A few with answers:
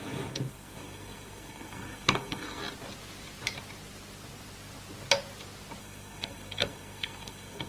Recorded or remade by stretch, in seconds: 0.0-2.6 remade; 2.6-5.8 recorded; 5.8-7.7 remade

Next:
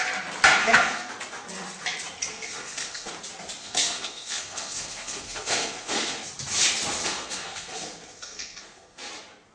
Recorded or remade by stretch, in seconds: 0.0-0.6 recorded; 0.6-1.1 remade; 1.1-2.3 recorded; 2.3-3.1 remade; 3.1-3.6 recorded; 3.6-6.3 remade; 6.3-7.0 recorded; 7.0-9.1 remade; 9.1-9.5 recorded

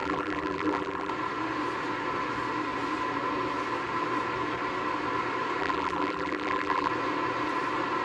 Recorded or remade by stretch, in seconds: 0.0-1.1 remade; 1.1-5.6 recorded; 5.6-6.9 remade; 6.9-8.0 recorded